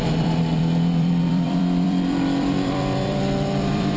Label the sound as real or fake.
fake